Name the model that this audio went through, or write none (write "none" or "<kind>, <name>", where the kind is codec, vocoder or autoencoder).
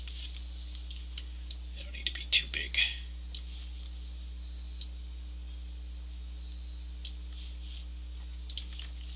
none